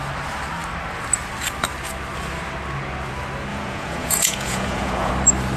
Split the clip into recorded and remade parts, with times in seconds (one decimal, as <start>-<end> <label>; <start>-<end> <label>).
0.0-3.5 recorded; 3.5-5.1 remade; 5.1-5.6 recorded